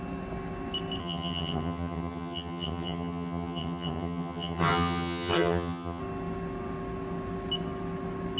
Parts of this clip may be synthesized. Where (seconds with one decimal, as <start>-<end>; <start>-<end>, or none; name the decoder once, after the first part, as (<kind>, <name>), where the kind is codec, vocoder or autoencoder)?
1.0-6.0 (vocoder, HiFi-GAN)